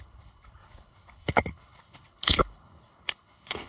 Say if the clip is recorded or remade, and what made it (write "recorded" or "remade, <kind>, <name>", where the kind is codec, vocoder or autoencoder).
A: remade, codec, HILCodec